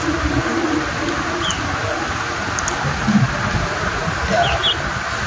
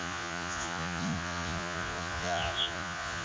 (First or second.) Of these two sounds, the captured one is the first